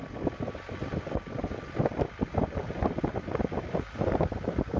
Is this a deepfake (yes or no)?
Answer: no